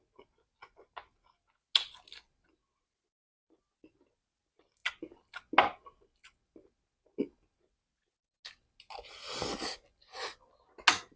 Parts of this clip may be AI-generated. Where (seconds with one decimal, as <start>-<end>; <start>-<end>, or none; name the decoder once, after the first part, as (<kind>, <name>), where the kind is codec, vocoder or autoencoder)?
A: none